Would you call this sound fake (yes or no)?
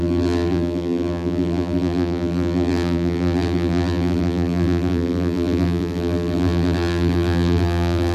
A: yes